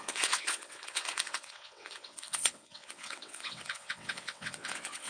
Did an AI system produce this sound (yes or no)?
yes